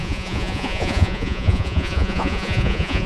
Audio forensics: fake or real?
fake